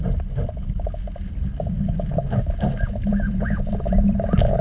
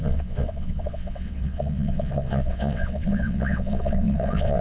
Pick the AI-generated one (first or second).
second